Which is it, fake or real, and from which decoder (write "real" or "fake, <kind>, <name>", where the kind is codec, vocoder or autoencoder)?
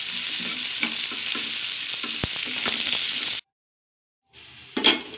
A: real